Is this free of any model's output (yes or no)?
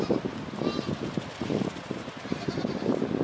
yes